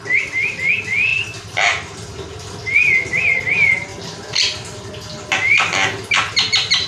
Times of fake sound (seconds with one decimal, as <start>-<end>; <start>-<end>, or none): none